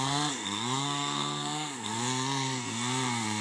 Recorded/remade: remade